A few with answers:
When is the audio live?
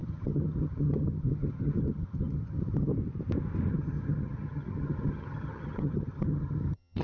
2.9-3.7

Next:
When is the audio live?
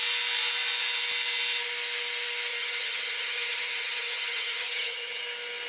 0.0-2.5; 5.2-5.7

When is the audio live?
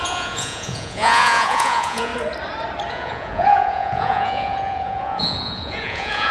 2.1-2.9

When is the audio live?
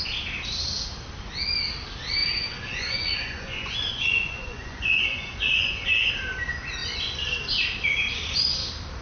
0.0-2.2; 6.1-9.0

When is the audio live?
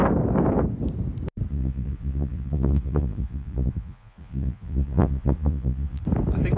0.0-1.5; 6.0-6.6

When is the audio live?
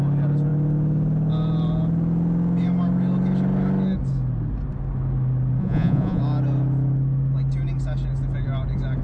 0.0-5.6; 6.2-9.0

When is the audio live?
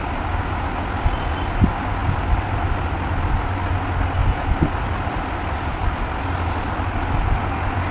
0.0-2.0; 3.6-7.9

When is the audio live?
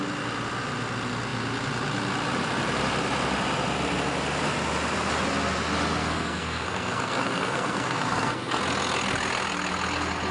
0.0-6.0; 8.6-10.3